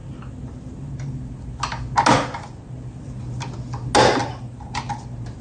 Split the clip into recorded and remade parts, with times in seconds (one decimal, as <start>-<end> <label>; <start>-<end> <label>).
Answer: 0.0-4.2 recorded; 4.2-4.9 remade; 4.9-5.4 recorded